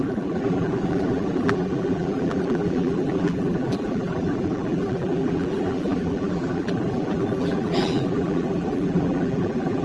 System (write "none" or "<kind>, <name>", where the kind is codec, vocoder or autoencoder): vocoder, BigVGAN v2